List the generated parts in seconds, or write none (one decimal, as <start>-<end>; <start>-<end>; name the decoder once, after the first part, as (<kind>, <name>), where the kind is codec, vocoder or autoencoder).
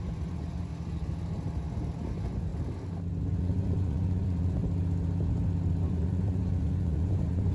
0.0-0.7 (vocoder, Vocos); 2.1-2.5; 3.4-4.6; 5.9-7.5